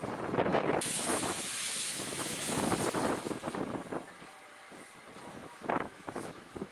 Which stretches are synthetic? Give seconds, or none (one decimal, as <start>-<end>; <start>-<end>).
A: 0.5-2.7; 5.3-6.7